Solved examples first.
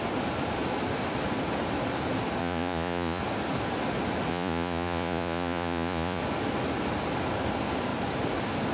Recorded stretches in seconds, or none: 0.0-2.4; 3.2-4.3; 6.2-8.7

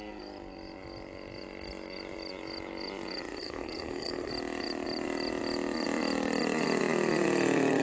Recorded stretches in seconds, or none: 0.0-3.4; 4.3-7.8

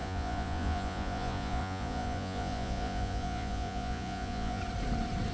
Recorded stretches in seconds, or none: 4.6-5.3

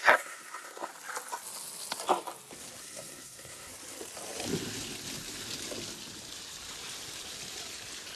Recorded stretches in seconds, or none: 0.9-2.8; 3.7-8.2

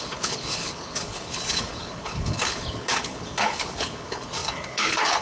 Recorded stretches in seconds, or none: none

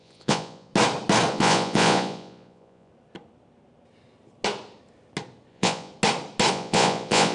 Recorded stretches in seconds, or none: 0.7-1.3; 2.9-5.5; 5.9-6.5

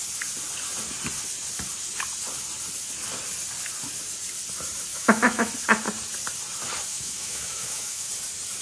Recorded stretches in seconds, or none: 0.0-4.9; 5.5-6.9; 8.1-8.6